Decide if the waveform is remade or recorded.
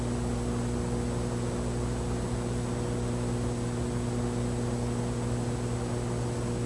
recorded